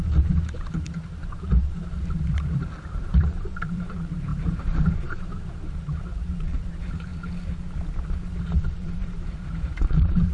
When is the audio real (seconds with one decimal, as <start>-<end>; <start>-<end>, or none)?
7.1-8.4